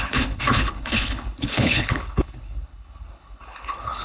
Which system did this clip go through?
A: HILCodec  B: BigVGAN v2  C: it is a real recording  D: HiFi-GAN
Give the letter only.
A